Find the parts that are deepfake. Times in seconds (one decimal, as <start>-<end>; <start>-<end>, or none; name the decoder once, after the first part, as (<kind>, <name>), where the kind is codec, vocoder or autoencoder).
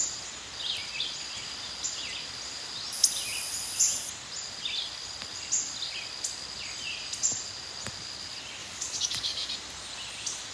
8.6-9.5 (codec, DAC)